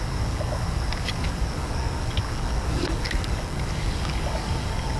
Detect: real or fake fake